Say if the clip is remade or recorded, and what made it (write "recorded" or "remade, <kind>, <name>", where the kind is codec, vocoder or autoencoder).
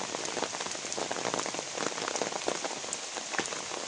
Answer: recorded